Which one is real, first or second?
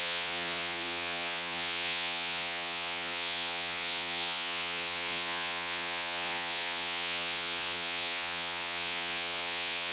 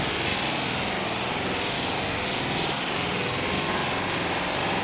second